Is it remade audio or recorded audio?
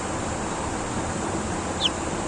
remade